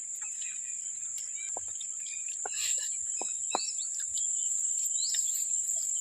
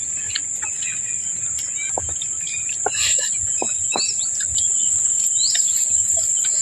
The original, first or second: second